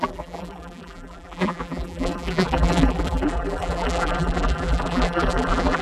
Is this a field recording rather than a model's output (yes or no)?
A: no